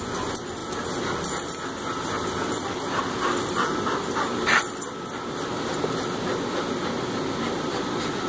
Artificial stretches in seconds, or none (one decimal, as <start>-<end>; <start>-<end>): none